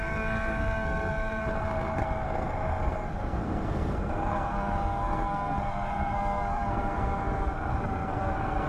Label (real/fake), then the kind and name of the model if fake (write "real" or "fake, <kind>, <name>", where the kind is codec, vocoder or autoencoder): fake, codec, SNAC